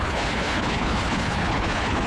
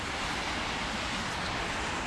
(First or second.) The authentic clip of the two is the second